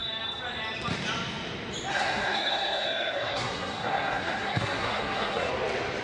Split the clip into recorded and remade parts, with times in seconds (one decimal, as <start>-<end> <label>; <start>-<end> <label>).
0.0-1.9 recorded; 1.9-5.5 remade; 5.5-6.0 recorded